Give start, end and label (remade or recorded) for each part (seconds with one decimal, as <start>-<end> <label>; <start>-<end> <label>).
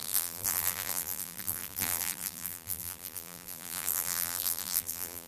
0.0-5.3 remade